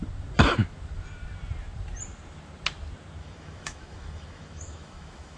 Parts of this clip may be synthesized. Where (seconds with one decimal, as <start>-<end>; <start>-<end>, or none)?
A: 3.2-5.4